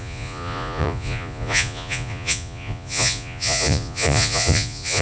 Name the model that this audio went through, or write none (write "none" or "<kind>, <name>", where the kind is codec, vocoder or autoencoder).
vocoder, Vocos